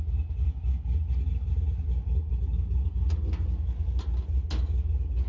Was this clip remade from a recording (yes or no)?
no